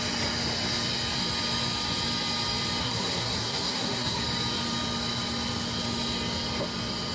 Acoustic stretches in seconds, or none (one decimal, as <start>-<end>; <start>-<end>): 0.0-2.8; 4.2-7.1